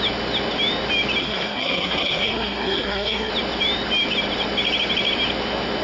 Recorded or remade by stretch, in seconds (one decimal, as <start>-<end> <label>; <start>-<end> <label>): 0.0-1.2 recorded; 1.2-3.3 remade; 3.3-5.8 recorded